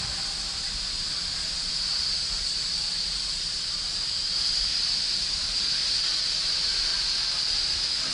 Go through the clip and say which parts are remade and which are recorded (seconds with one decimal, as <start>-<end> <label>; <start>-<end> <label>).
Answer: 0.0-6.9 remade; 6.9-8.1 recorded